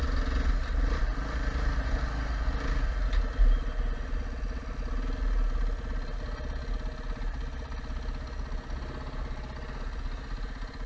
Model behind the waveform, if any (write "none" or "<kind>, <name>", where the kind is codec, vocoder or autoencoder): none